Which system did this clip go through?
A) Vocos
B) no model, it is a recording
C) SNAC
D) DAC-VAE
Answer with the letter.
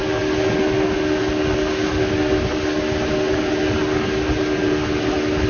B